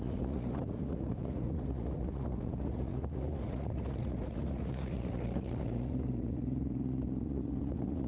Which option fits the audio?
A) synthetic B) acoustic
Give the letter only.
A